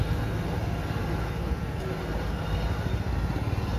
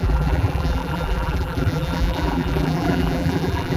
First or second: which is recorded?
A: first